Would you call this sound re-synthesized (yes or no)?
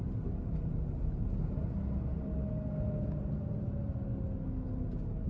no